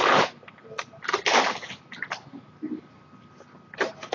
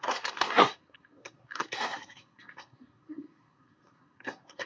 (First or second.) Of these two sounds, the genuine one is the first